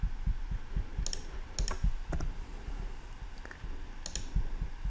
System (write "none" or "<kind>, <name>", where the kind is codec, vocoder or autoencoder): none